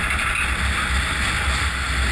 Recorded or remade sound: recorded